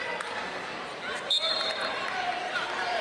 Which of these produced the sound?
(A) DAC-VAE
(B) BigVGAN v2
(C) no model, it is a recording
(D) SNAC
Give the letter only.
C